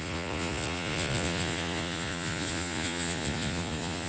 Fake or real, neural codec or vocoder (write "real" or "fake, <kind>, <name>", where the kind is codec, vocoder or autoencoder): fake, vocoder, Vocos